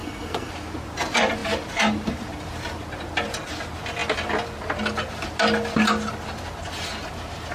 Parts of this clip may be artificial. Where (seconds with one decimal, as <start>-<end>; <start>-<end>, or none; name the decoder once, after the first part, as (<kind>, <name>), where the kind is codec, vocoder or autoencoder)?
0.0-0.5 (codec, SNAC)